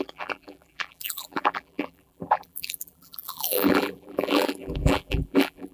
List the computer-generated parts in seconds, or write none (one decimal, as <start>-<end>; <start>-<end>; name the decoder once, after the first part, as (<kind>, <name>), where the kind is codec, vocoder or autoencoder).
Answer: 0.0-5.7 (vocoder, BigVGAN v2)